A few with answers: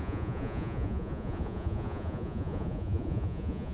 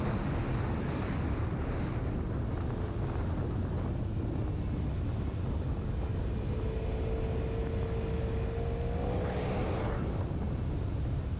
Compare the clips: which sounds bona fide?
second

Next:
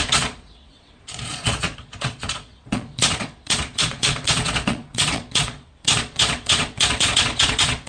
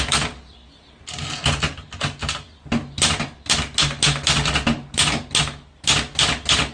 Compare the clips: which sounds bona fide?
second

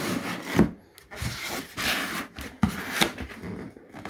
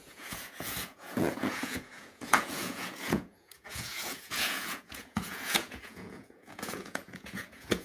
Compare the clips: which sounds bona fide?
first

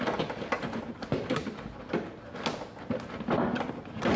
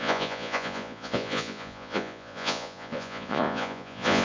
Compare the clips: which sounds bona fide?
first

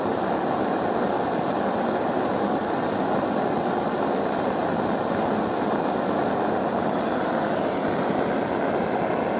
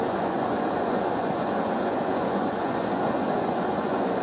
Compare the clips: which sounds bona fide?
first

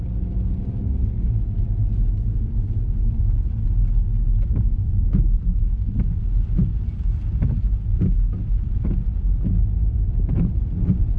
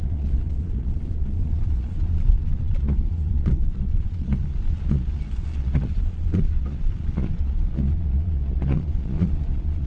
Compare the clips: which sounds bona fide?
first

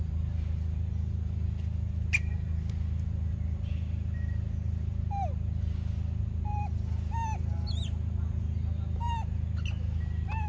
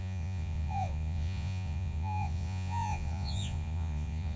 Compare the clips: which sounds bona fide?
first